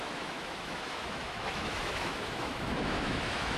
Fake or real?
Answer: fake